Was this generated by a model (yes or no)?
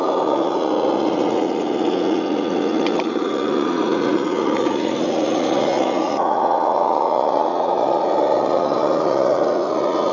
yes